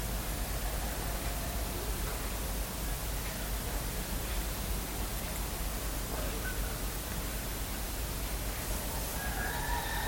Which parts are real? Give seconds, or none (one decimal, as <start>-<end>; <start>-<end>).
0.0-10.1